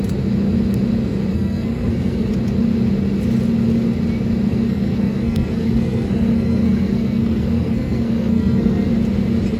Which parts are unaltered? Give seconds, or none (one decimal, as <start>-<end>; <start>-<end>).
0.0-1.3; 2.3-4.5; 8.9-9.6